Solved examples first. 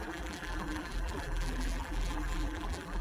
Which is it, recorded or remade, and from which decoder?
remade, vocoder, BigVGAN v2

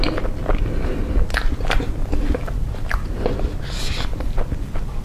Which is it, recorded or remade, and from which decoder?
recorded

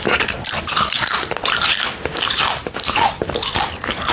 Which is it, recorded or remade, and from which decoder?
recorded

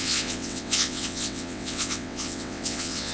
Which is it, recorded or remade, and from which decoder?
remade, vocoder, WaveNeXt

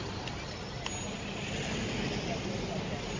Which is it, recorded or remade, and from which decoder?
recorded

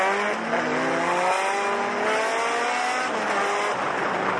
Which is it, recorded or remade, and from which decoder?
recorded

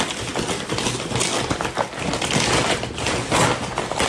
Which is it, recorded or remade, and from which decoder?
recorded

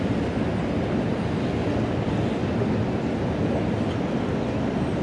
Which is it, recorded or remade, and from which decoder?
recorded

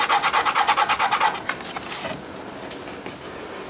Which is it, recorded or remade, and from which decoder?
recorded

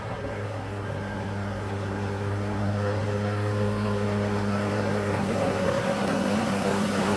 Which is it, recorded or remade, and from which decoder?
remade, codec, SNAC